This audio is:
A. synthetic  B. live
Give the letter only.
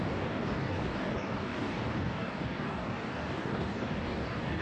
A